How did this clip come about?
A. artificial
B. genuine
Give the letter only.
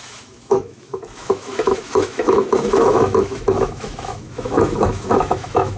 A